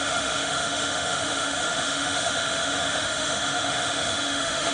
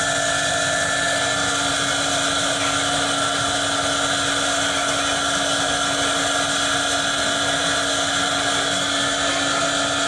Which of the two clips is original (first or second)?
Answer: second